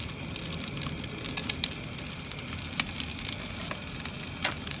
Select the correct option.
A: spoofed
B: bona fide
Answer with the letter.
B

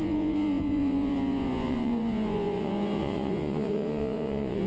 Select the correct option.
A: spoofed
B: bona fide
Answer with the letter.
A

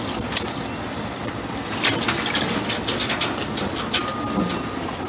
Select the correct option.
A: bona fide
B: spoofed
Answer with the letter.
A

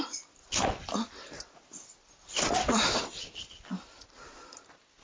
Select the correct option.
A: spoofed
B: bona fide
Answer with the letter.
B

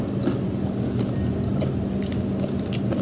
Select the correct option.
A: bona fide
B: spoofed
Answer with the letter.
A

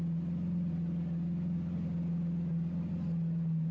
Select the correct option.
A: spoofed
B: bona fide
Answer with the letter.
B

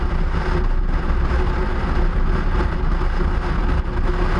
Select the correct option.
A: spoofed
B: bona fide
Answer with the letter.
B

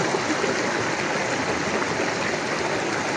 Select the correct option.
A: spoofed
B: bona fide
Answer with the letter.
B